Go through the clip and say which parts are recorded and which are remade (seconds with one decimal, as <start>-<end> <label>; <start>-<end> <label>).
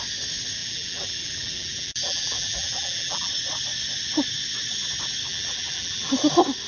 0.0-0.6 recorded; 0.6-3.3 remade; 3.3-5.3 recorded; 5.3-6.1 remade; 6.1-6.7 recorded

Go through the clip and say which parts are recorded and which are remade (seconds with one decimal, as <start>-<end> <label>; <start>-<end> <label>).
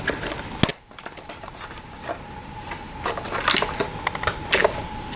0.0-0.7 recorded; 0.7-3.8 remade; 3.8-4.6 recorded; 4.6-5.2 remade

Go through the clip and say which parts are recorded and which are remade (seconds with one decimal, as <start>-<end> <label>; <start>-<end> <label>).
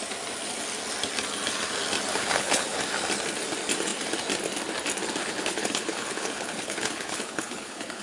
0.0-2.1 recorded; 2.1-2.8 remade; 2.8-5.2 recorded; 5.2-8.0 remade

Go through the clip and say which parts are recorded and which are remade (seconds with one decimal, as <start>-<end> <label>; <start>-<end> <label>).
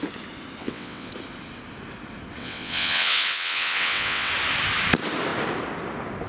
0.0-0.6 recorded; 0.6-1.1 remade; 1.1-2.4 recorded; 2.4-4.3 remade; 4.3-6.3 recorded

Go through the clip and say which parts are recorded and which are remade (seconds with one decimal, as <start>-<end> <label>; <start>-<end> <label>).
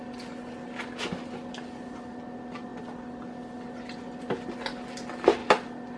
0.0-6.0 recorded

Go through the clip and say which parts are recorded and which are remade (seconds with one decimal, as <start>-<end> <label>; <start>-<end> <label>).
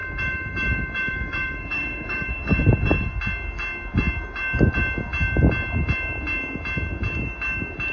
0.0-3.1 remade; 3.1-7.9 recorded